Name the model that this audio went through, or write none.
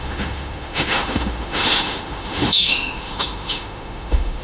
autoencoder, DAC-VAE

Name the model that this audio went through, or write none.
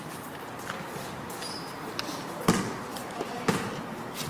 none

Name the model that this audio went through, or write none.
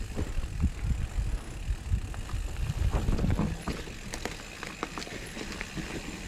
none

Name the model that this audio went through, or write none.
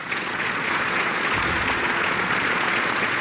vocoder, Vocos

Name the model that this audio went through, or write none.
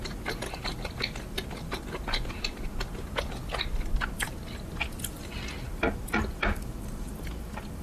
none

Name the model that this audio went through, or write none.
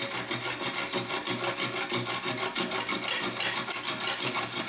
none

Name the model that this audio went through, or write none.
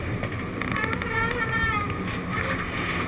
none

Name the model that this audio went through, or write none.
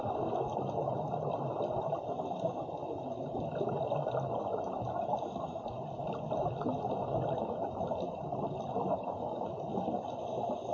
none